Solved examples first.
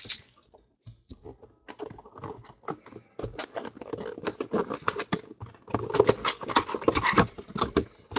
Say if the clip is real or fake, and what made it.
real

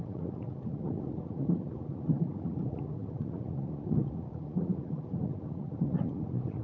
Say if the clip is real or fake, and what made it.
fake, vocoder, Vocos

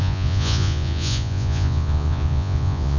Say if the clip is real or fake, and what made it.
fake, vocoder, Vocos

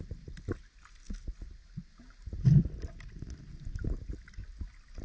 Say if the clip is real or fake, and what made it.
real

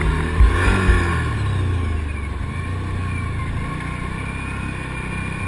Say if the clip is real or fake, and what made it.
real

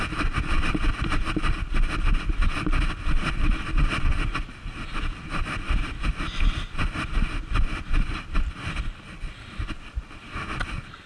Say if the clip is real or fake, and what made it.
real